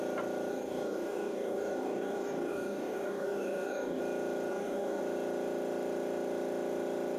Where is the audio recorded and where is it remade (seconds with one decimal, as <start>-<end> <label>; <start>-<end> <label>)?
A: 0.0-0.5 recorded; 0.5-4.0 remade; 4.0-4.5 recorded; 4.5-5.0 remade; 5.0-7.2 recorded